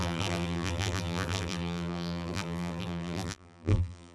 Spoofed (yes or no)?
yes